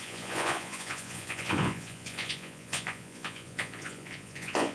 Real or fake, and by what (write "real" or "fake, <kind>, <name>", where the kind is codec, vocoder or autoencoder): fake, vocoder, Vocos